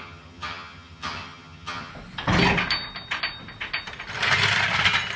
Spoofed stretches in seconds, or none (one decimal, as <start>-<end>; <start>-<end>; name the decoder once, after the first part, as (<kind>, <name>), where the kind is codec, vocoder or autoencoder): 0.0-1.9 (vocoder, HiFi-GAN)